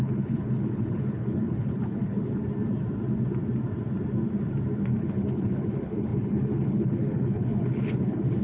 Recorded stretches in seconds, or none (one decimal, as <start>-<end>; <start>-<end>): 2.4-5.0